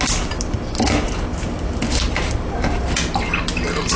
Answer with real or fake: real